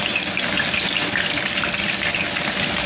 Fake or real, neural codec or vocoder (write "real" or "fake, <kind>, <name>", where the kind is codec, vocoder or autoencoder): real